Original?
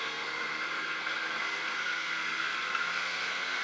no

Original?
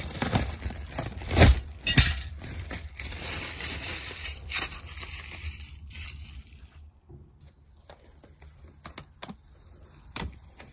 no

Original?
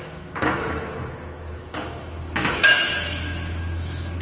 no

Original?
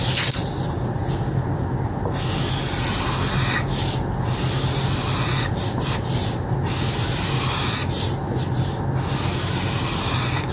yes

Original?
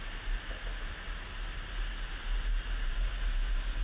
yes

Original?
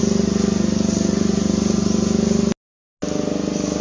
yes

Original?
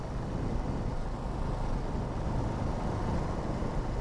yes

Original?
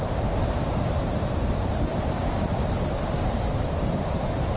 no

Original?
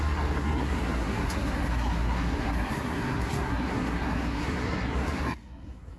no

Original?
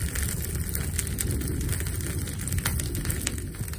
yes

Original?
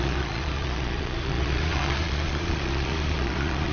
no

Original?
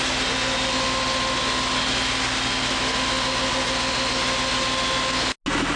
yes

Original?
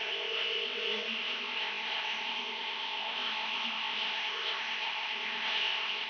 no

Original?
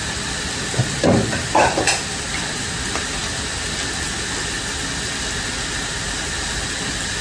yes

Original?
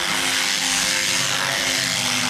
yes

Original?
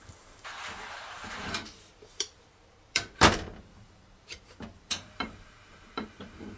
no